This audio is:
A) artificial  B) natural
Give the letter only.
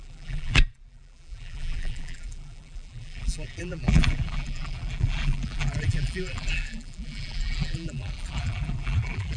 A